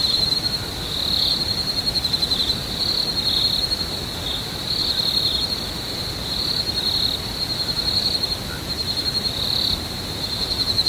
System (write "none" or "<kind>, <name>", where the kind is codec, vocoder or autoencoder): none